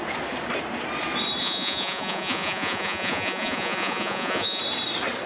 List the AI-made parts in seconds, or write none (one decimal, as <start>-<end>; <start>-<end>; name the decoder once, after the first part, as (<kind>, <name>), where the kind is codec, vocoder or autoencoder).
1.4-4.6 (vocoder, Vocos)